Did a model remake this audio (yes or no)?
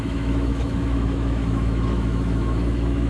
yes